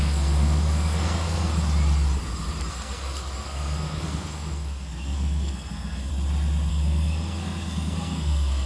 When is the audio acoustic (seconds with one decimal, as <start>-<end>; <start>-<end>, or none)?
1.5-2.7; 6.1-6.7